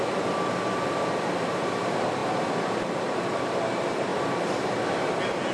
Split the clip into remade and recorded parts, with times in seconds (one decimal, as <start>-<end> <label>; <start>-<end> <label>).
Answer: 0.0-4.1 recorded; 4.1-4.7 remade; 4.7-5.5 recorded